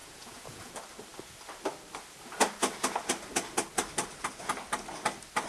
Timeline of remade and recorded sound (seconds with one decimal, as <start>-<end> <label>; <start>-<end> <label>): 0.0-0.7 remade; 0.7-5.5 recorded